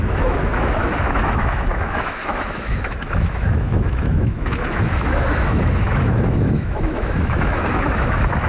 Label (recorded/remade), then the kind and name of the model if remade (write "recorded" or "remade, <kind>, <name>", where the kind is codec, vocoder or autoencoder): remade, autoencoder, DAC-VAE